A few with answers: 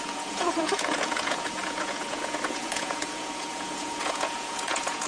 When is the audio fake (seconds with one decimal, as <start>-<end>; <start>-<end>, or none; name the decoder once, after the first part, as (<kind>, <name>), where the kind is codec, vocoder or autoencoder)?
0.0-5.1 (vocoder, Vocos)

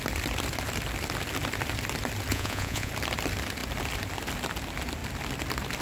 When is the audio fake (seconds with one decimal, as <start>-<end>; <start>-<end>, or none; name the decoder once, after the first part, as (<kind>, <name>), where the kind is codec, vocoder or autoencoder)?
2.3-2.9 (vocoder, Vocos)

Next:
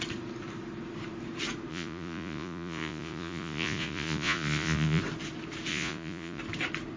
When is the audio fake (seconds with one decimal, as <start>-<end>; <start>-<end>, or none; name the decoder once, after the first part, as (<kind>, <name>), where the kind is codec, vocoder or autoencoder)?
1.7-5.0 (vocoder, Vocos); 5.7-6.4

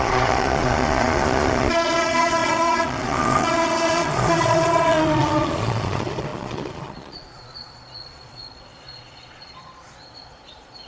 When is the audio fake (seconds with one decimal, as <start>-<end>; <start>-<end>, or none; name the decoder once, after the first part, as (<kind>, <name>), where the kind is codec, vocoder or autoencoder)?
0.0-10.9 (vocoder, Vocos)

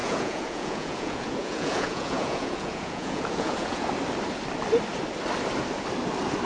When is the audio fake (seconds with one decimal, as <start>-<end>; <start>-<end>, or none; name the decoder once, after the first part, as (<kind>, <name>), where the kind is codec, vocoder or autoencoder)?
0.0-3.9 (vocoder, Vocos)

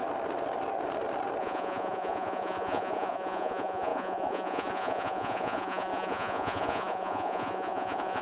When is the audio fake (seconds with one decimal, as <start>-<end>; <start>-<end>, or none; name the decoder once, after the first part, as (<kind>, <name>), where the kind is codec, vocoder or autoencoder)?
1.4-8.2 (vocoder, Vocos)

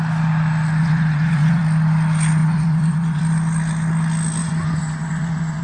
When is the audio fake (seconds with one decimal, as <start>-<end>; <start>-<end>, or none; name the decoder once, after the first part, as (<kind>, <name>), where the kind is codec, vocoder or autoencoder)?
0.8-1.6 (vocoder, Vocos); 2.4-3.2; 4.4-5.6

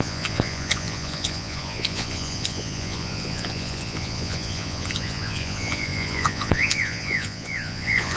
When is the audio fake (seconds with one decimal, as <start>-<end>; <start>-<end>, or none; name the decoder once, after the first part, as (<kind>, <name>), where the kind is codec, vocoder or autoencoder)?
0.0-8.2 (vocoder, Vocos)